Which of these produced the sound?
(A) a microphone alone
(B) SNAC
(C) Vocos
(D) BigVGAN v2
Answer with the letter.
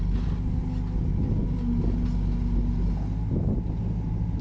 A